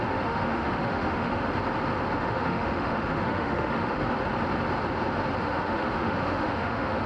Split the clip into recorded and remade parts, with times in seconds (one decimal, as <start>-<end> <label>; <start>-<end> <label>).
0.0-1.5 remade; 1.5-2.2 recorded; 2.2-4.0 remade; 4.0-5.4 recorded; 5.4-7.1 remade